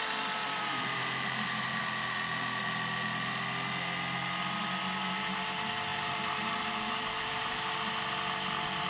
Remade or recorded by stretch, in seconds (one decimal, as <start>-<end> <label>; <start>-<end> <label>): 0.0-0.4 recorded; 0.4-1.8 remade; 1.8-5.9 recorded; 5.9-7.8 remade; 7.8-8.9 recorded